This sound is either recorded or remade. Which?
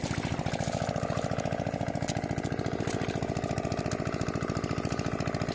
recorded